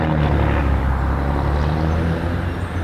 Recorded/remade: recorded